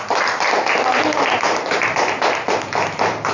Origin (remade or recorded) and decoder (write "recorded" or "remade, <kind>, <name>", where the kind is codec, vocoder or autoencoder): recorded